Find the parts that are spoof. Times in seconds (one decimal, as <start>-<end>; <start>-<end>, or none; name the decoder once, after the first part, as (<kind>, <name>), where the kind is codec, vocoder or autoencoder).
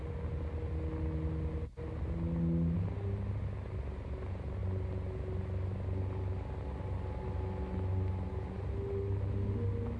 none